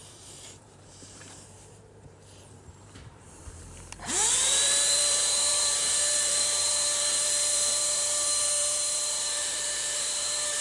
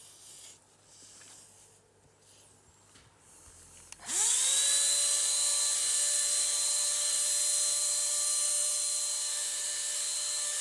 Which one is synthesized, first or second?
first